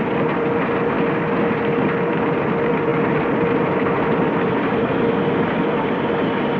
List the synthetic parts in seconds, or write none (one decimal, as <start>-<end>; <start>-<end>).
none